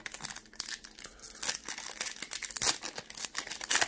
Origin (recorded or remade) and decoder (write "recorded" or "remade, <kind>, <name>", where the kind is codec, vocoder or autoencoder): recorded